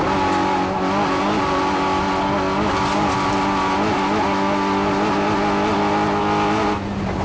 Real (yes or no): yes